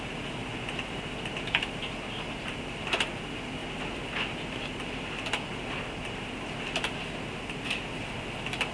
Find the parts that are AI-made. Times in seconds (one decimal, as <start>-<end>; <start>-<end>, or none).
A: none